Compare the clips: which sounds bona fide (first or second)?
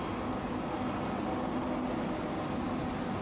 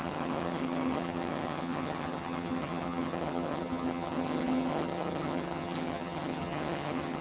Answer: first